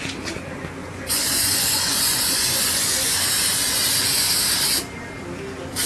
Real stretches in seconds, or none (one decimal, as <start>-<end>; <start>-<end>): 0.0-0.8; 4.3-5.9